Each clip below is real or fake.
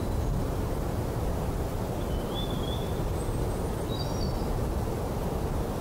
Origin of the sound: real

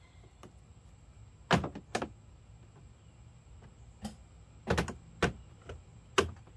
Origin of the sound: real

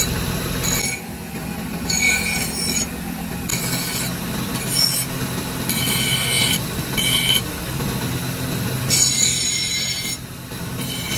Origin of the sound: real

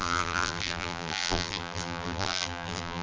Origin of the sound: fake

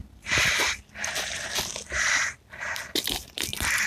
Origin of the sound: real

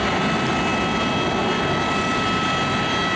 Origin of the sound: real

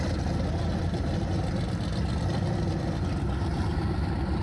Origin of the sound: fake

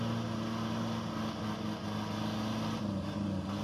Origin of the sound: real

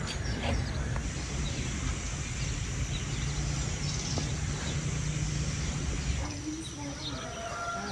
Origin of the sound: real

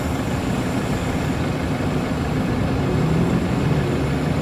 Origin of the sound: real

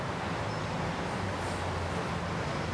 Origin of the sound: real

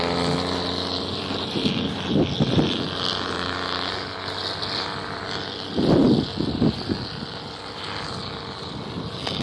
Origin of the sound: real